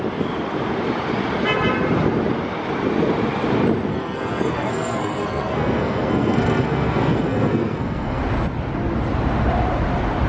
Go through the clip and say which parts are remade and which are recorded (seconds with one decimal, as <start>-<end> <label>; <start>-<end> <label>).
0.0-3.9 recorded; 3.9-8.2 remade; 8.2-10.3 recorded

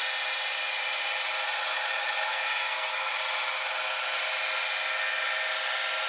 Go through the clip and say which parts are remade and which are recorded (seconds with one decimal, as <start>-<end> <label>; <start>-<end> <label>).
0.0-2.3 recorded; 2.3-3.1 remade; 3.1-6.1 recorded

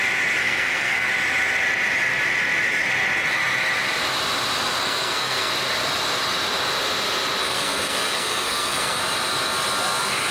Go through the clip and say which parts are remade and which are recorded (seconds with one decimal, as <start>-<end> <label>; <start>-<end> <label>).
0.0-0.4 recorded; 0.4-1.1 remade; 1.1-4.8 recorded; 4.8-5.5 remade; 5.5-7.4 recorded; 7.4-9.0 remade; 9.0-10.3 recorded